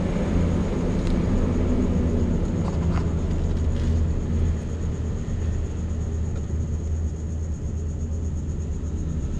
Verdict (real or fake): real